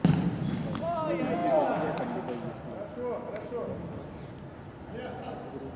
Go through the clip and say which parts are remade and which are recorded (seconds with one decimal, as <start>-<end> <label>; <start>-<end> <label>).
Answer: 0.0-5.8 recorded